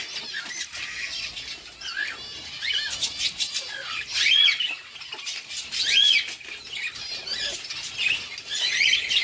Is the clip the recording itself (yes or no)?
yes